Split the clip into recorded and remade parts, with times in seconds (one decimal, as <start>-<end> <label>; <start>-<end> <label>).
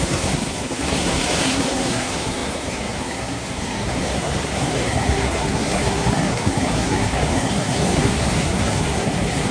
0.0-9.5 remade